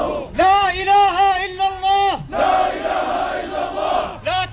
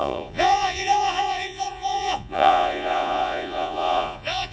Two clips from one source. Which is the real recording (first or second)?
first